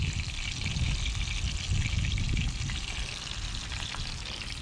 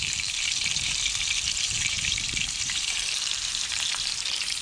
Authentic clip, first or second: first